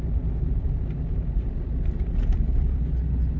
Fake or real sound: real